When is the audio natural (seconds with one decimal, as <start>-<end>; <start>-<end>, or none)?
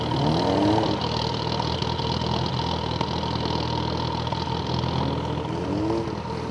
0.0-6.5